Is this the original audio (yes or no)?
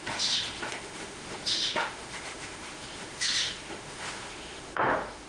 no